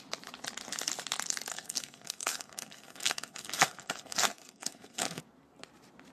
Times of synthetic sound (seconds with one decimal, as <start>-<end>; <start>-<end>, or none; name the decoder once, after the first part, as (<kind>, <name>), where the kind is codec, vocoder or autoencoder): 1.5-5.2 (codec, SNAC)